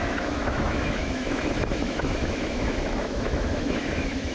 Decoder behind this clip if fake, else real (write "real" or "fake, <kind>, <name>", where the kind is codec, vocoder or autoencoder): fake, autoencoder, DAC-VAE